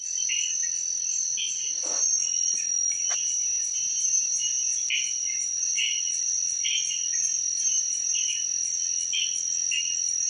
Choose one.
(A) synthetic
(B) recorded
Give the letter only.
B